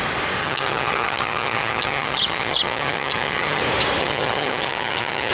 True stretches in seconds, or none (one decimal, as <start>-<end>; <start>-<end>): 0.0-0.4; 3.6-4.0